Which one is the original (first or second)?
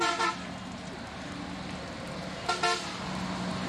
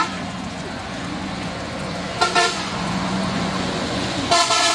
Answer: first